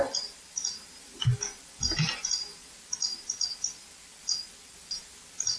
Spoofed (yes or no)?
no